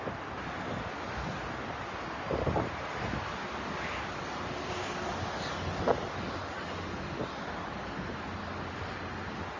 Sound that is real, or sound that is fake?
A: real